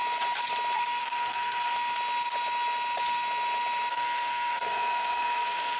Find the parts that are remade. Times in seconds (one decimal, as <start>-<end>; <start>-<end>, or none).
1.0-1.7; 3.9-5.8